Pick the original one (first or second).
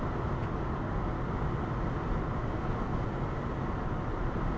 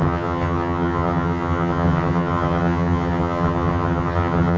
first